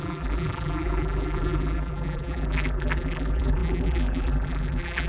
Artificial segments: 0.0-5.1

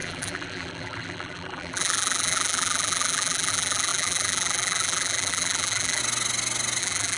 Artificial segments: 0.0-6.0; 6.8-7.2

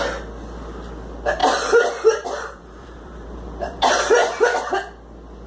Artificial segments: 1.4-4.7

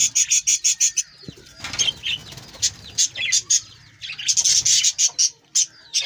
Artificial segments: 0.0-1.0

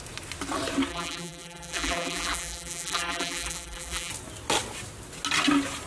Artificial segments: 0.9-4.1

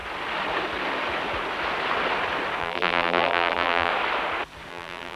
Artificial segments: 2.6-3.9; 4.7-5.2

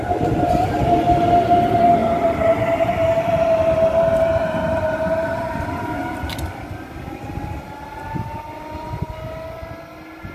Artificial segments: none

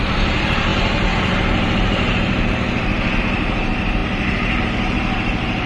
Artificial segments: 0.0-5.7